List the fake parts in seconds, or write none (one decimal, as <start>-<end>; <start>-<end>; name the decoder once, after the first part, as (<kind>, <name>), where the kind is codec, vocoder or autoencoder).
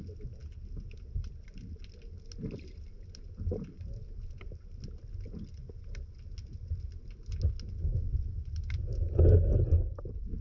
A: none